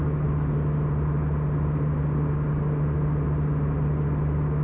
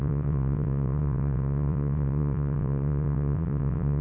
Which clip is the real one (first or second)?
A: first